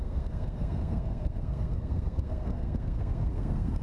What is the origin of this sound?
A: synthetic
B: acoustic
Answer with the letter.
A